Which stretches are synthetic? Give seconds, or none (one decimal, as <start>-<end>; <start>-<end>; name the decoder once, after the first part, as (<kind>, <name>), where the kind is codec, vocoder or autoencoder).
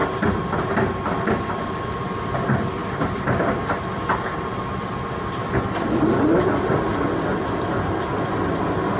none